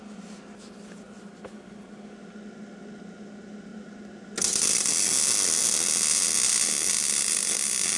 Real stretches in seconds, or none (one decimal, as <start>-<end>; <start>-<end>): 0.0-8.0